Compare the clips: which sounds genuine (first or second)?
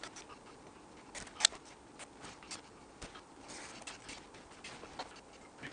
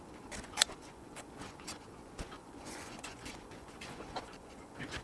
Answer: first